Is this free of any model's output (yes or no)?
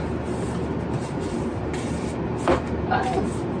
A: yes